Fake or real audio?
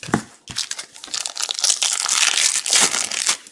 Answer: real